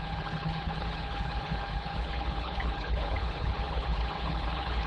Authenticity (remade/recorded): remade